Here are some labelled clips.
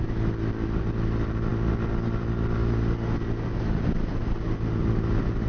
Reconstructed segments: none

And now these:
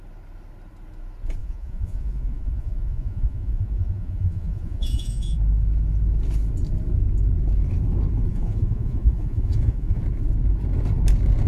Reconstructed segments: 1.4-5.4 (vocoder, Vocos); 8.3-10.0

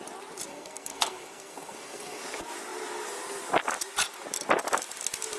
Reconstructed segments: 0.5-2.2 (codec, SNAC)